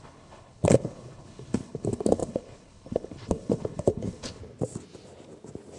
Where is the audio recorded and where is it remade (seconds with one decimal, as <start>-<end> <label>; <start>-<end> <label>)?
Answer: 0.0-4.4 remade; 4.4-5.8 recorded